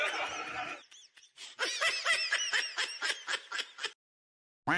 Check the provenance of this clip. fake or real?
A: real